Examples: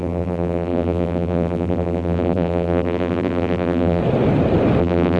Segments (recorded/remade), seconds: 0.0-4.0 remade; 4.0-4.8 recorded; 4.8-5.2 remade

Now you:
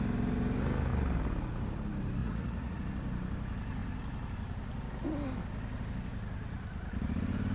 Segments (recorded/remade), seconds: 0.0-2.2 recorded; 2.2-2.8 remade; 2.8-7.5 recorded